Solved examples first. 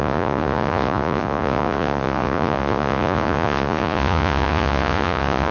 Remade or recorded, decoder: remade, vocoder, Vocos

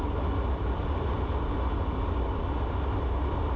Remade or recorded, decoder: recorded